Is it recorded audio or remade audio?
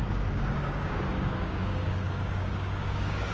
remade